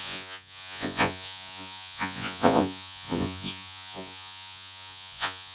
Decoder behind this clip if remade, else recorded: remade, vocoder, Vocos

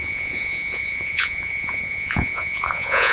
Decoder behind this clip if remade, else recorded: remade, vocoder, Vocos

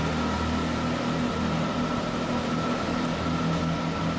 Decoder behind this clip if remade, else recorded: recorded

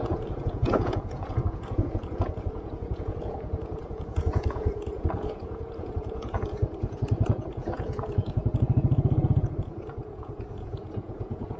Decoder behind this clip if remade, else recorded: remade, vocoder, Vocos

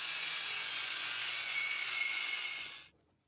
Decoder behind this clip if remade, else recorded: remade, vocoder, Vocos